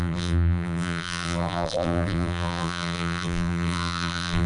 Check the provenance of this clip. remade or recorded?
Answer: remade